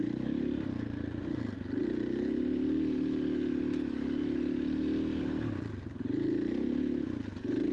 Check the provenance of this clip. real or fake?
real